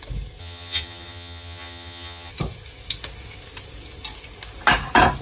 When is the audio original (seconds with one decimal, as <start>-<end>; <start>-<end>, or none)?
0.0-0.4; 2.3-5.2